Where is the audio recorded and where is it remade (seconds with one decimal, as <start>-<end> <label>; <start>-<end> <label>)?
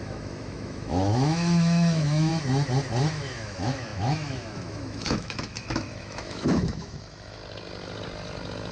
0.0-2.3 remade; 2.3-3.0 recorded; 3.0-7.4 remade; 7.4-8.7 recorded